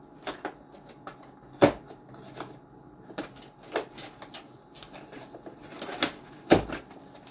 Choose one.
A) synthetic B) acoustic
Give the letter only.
B